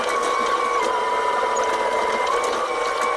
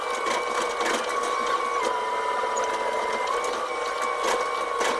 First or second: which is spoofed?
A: first